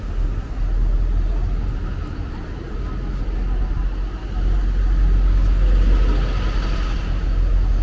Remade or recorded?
recorded